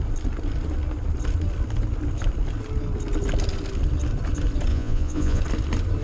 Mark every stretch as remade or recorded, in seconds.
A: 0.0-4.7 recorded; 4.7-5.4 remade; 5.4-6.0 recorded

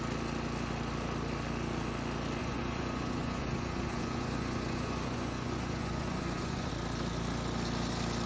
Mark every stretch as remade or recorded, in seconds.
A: 0.0-2.4 recorded; 2.4-6.7 remade; 6.7-8.3 recorded

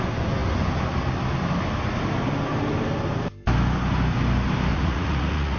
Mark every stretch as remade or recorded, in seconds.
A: 0.0-4.7 recorded; 4.7-5.6 remade

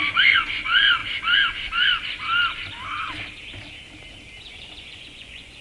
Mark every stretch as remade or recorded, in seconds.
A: 0.0-1.0 remade; 1.0-4.4 recorded; 4.4-5.6 remade

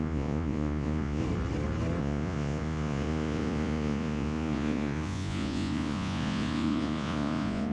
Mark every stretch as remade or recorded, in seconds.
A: 0.0-1.2 remade; 1.2-2.0 recorded; 2.0-7.7 remade

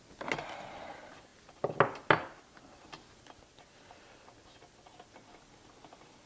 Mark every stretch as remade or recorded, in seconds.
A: 0.0-6.3 recorded

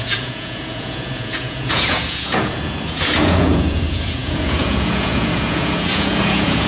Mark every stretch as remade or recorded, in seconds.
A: 0.0-6.7 remade